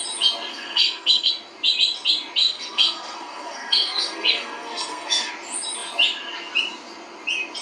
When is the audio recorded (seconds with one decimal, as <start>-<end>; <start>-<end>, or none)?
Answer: 0.0-0.5; 1.3-2.4; 5.3-7.6